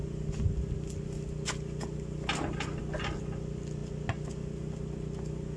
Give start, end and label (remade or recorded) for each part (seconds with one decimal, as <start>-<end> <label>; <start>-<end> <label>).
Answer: 0.0-5.6 recorded